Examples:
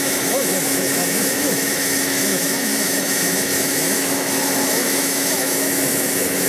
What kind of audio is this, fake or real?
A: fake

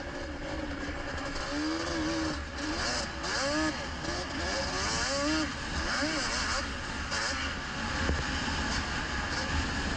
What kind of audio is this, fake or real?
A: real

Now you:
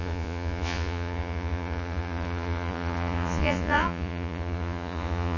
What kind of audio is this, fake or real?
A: fake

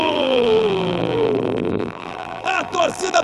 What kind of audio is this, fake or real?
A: fake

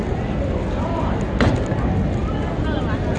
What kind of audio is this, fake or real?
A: real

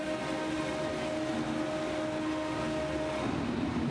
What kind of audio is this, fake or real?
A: real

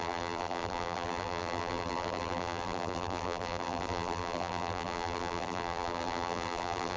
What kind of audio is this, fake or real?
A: fake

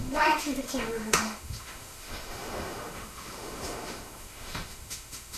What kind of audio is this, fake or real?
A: fake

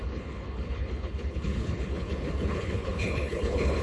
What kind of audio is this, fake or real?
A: fake